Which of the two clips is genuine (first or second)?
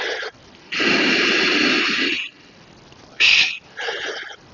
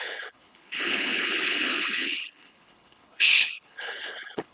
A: first